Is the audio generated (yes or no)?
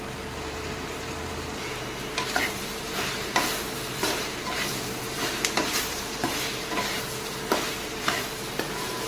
yes